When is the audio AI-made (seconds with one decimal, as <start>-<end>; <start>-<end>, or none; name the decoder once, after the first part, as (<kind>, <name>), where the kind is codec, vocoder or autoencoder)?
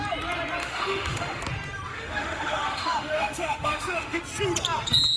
0.6-1.4 (autoencoder, DAC-VAE); 1.9-4.2